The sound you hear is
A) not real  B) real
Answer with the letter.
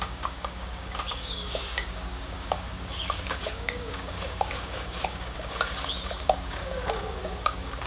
A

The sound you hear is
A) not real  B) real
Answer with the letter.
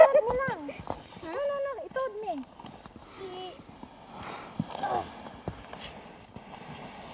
B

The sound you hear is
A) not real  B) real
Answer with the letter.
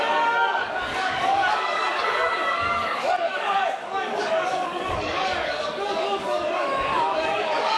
A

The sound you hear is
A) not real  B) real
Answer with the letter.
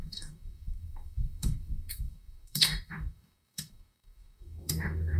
A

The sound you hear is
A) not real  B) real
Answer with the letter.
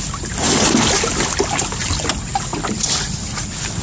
B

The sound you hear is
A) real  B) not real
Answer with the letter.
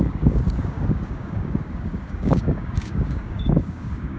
B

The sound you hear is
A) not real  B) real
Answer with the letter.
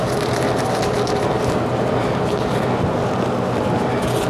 B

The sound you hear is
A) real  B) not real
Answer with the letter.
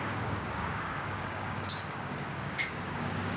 B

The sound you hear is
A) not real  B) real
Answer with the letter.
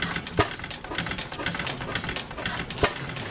B